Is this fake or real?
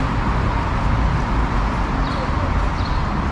real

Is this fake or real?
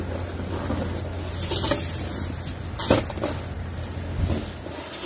real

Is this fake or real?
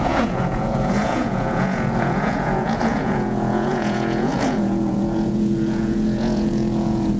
fake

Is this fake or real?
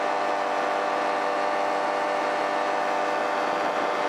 real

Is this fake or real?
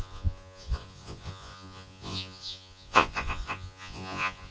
fake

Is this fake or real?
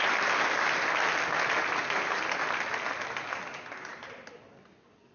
real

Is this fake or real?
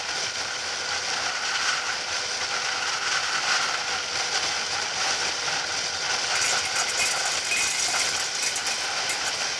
real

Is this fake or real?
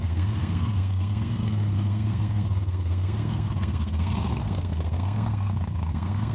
fake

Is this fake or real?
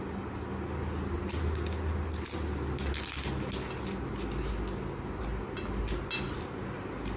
real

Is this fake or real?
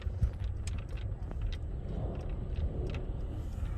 real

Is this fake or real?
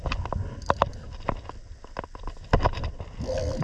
real